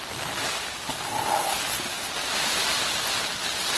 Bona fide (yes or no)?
yes